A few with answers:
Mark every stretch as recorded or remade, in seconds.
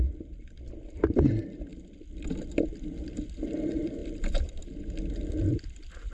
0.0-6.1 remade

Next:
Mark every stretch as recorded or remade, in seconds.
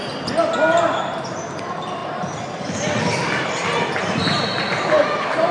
0.0-5.5 recorded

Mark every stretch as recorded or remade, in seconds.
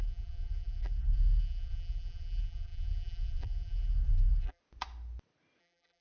0.0-4.6 remade; 4.6-5.6 recorded; 5.6-6.0 remade